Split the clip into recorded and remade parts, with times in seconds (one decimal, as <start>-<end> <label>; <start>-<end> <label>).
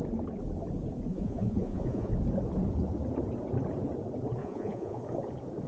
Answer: 0.0-1.1 recorded; 1.1-2.1 remade; 2.1-4.4 recorded; 4.4-5.0 remade; 5.0-5.7 recorded